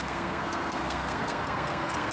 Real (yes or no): no